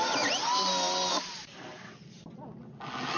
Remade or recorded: recorded